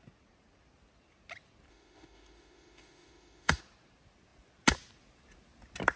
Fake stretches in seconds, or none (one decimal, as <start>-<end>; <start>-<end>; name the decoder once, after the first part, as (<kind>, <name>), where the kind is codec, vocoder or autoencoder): 1.7-3.6 (autoencoder, DAC-VAE)